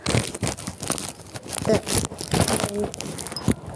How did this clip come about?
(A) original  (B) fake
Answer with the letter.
A